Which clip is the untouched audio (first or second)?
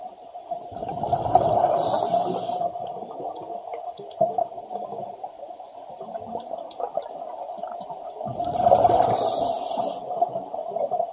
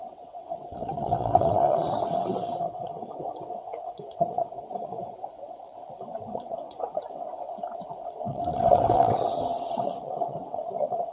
first